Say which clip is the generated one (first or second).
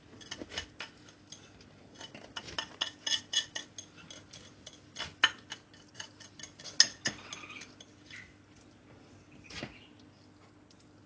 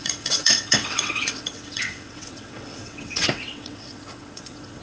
second